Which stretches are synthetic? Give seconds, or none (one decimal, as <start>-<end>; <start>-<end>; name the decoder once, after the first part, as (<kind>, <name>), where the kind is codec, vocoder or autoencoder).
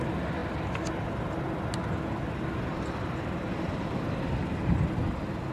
none